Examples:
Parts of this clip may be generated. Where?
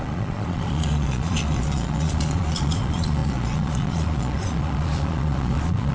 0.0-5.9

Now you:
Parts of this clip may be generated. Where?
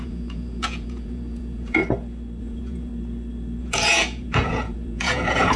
0.0-1.8; 2.4-2.9; 3.6-5.6